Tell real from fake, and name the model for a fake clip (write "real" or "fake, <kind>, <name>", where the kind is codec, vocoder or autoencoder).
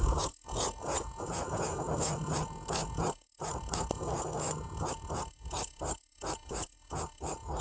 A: fake, autoencoder, DAC-VAE